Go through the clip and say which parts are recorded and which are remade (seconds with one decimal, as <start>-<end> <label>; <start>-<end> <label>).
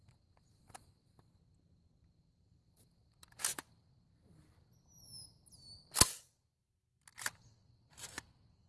0.0-8.7 recorded